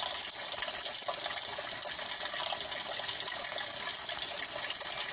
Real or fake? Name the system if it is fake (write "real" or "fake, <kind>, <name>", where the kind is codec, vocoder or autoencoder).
real